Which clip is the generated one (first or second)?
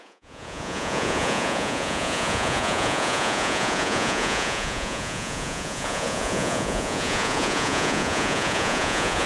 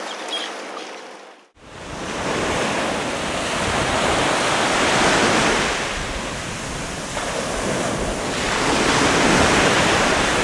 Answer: first